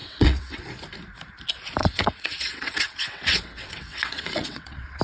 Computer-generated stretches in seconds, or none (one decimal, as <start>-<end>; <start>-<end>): 0.0-0.6; 1.8-5.0

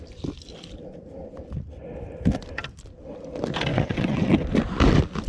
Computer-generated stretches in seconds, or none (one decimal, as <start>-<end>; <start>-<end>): 3.7-4.3

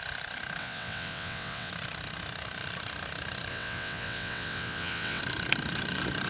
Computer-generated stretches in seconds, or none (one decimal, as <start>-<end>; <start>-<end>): 0.6-1.7; 3.5-5.2

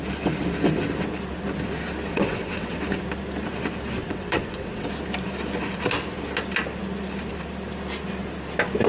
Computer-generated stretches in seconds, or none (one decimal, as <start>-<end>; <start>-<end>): 2.1-2.8; 4.0-4.9

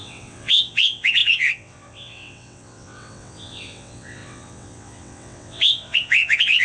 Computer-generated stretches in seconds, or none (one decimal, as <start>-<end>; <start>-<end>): 0.0-6.6

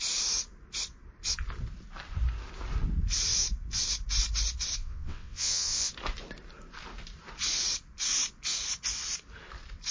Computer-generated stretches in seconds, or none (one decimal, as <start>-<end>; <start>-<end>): 4.8-5.9